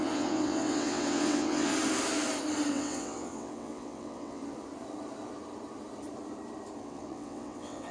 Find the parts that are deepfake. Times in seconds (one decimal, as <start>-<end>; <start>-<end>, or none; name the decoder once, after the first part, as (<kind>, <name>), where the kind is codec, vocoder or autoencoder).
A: 0.0-1.7 (vocoder, WaveNeXt); 2.7-4.4; 6.8-7.9